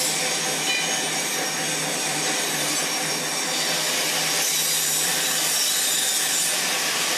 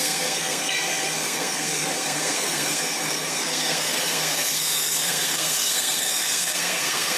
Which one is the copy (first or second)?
second